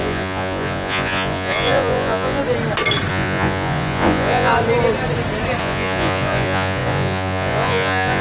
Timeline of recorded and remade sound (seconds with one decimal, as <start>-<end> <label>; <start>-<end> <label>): 0.0-2.4 remade; 2.4-3.1 recorded; 3.1-4.5 remade; 4.5-5.6 recorded; 5.6-8.2 remade